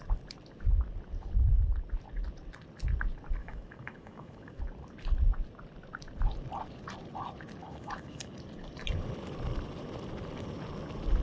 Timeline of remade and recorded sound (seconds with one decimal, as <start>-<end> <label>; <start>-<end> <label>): 0.0-3.4 recorded; 3.4-4.6 remade; 4.6-7.6 recorded; 7.6-8.3 remade; 8.3-11.2 recorded